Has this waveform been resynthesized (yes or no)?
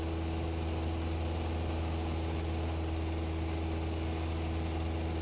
no